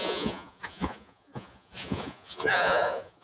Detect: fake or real fake